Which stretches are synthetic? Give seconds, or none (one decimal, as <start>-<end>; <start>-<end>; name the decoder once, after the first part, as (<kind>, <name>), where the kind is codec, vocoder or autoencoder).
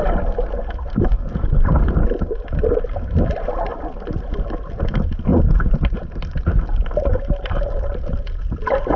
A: 3.7-4.3 (vocoder, BigVGAN v2); 5.3-6.5